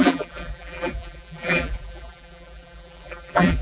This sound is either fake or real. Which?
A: fake